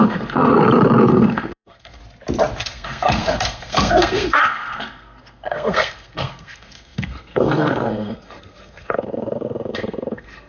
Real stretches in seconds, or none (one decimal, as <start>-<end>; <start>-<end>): 0.6-1.1; 2.0-2.6